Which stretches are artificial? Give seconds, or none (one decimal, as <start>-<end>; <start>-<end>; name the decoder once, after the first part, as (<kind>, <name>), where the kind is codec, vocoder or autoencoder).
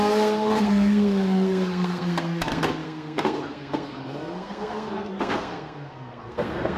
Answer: 0.0-6.8 (codec, SNAC)